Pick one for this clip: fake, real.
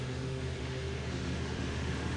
fake